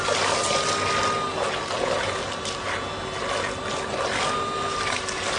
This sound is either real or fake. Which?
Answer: real